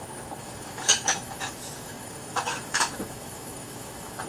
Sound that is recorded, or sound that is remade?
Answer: remade